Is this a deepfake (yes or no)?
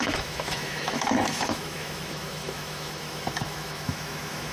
yes